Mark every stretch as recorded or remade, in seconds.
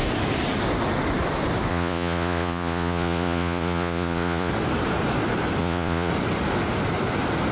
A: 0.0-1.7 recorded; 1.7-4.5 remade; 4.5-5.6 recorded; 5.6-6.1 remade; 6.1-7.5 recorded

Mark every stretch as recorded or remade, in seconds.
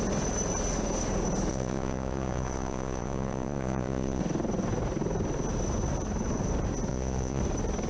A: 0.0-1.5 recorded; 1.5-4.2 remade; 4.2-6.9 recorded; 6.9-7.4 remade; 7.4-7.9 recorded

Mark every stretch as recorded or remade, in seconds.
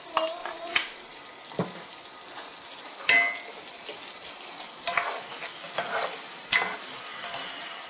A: 0.0-0.4 recorded; 0.4-1.2 remade; 1.2-7.9 recorded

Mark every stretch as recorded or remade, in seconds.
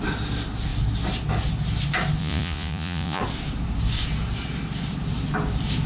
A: 0.0-2.2 recorded; 2.2-3.2 remade; 3.2-5.9 recorded